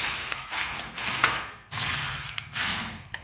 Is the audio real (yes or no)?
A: no